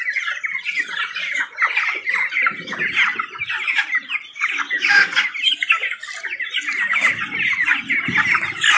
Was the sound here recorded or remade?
recorded